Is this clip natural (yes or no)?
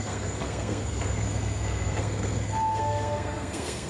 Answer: no